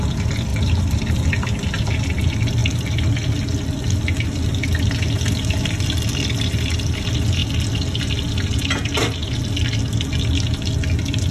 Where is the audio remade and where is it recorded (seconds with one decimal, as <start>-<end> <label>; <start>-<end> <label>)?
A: 0.0-0.5 recorded; 0.5-1.1 remade; 1.1-2.6 recorded; 2.6-4.8 remade; 4.8-11.3 recorded